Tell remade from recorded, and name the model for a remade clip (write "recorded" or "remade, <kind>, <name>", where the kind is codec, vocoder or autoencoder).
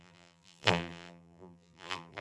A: remade, vocoder, BigVGAN v2